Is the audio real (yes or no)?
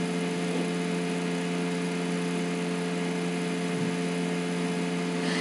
yes